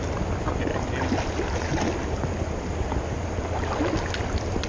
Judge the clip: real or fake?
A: real